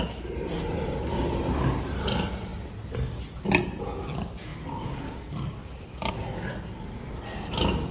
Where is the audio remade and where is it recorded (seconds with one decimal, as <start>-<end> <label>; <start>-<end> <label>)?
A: 0.0-7.9 recorded